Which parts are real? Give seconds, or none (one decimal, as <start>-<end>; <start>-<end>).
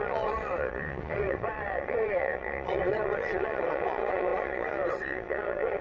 none